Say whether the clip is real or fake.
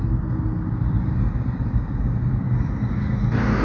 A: real